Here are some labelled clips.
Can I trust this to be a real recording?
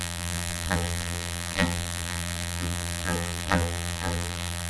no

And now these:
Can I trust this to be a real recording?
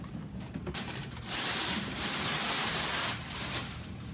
no